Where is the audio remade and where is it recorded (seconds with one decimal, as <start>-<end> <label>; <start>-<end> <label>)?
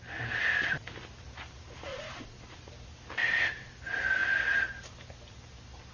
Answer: 0.0-1.9 recorded; 1.9-2.6 remade; 2.6-3.2 recorded; 3.2-3.7 remade; 3.7-5.9 recorded